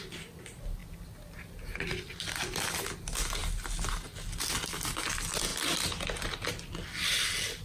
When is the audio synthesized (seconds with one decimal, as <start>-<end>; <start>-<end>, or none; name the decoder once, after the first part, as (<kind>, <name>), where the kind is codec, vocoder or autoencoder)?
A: none